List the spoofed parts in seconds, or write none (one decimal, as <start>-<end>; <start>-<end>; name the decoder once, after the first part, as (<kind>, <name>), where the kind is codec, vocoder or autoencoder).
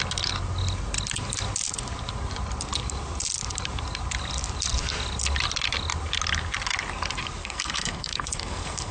7.4-8.9 (codec, SNAC)